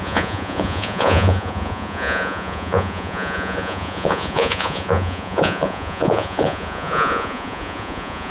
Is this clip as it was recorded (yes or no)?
no